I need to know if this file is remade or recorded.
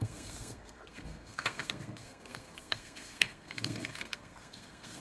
remade